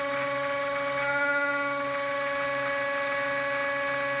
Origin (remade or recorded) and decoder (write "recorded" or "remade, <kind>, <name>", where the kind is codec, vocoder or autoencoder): recorded